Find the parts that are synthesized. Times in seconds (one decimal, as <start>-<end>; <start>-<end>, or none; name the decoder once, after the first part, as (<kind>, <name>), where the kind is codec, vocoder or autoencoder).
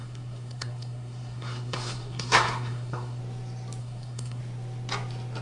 0.0-3.2 (codec, SNAC); 3.8-4.4